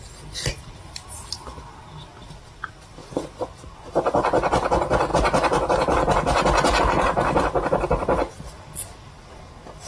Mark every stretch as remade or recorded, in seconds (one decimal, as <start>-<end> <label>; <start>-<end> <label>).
0.0-9.9 recorded